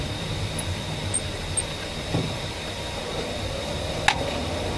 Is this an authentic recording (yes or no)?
yes